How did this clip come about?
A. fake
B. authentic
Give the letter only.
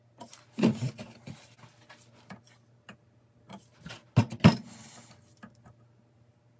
B